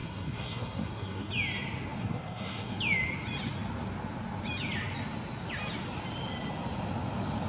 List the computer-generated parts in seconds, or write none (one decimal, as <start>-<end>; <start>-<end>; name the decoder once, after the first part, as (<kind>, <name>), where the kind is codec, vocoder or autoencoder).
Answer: 0.0-1.3 (codec, SNAC); 2.0-2.8